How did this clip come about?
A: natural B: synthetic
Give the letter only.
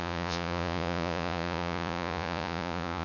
B